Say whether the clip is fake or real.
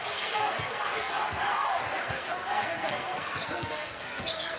fake